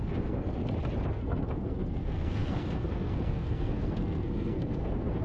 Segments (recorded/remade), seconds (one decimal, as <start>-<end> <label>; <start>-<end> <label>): 0.0-0.6 remade; 0.6-1.1 recorded; 1.1-5.2 remade